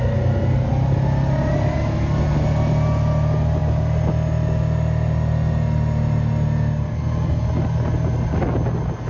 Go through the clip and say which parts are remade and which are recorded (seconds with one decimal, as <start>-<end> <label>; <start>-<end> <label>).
0.0-9.1 recorded